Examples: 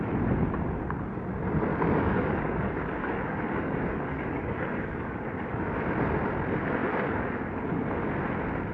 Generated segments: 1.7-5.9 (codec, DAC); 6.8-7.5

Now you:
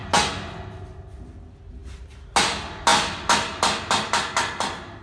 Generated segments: none

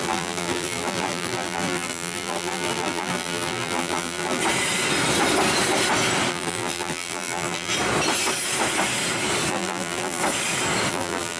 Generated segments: 0.0-4.4 (vocoder, BigVGAN v2); 6.3-7.7; 9.5-10.2; 10.9-11.4

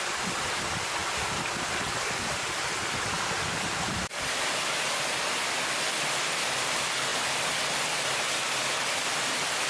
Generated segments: 1.0-5.4 (vocoder, BigVGAN v2)

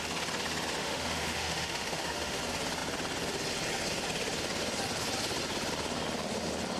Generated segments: 0.8-2.4 (autoencoder, DAC-VAE)

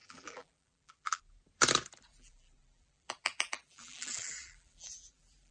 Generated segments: 0.0-1.2 (vocoder, BigVGAN v2); 2.1-5.5

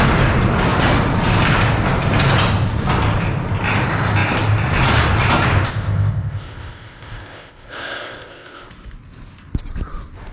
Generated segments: 5.7-8.7 (codec, ZipCodec)

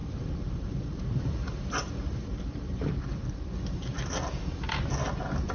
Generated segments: 0.0-3.3 (vocoder, BigVGAN v2)